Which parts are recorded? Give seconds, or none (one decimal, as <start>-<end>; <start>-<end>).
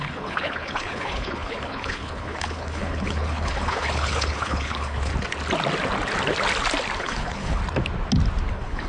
5.1-7.0; 7.6-8.5